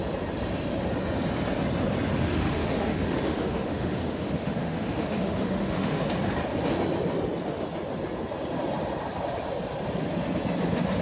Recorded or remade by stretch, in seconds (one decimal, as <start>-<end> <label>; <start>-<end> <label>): 0.0-2.1 recorded; 2.1-6.0 remade; 6.0-11.0 recorded